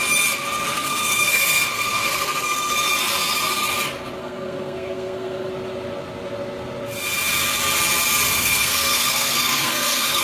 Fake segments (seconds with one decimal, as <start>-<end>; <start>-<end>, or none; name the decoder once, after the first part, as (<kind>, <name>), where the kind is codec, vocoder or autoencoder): 0.7-2.7 (codec, SNAC); 4.2-5.5; 8.3-10.2